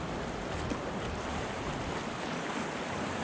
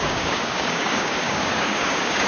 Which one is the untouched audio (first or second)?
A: first